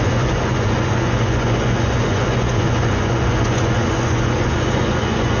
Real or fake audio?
fake